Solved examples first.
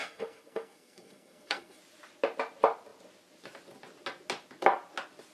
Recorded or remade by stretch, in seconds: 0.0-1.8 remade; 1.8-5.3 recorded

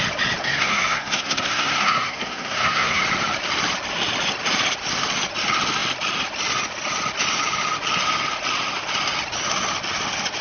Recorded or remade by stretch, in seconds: 0.0-0.4 recorded; 0.4-3.0 remade; 3.0-10.4 recorded

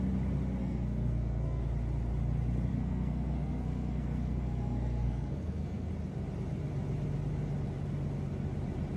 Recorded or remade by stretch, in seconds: 0.0-0.6 recorded; 0.6-1.6 remade; 1.6-2.7 recorded; 2.7-5.9 remade; 5.9-9.0 recorded

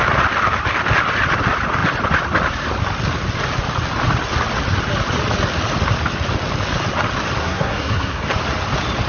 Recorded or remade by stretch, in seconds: 0.0-7.4 recorded; 7.4-8.2 remade; 8.2-9.1 recorded

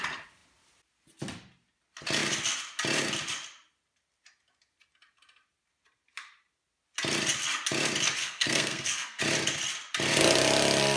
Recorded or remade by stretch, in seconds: 0.0-8.2 recorded; 8.2-9.2 remade; 9.2-11.0 recorded

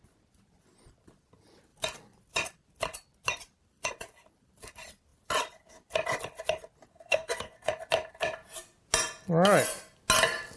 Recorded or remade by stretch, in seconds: 0.0-6.9 recorded; 6.9-7.7 remade; 7.7-10.6 recorded